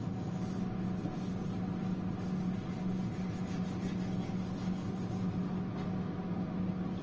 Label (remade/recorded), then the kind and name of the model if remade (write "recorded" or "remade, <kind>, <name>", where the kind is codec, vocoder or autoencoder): recorded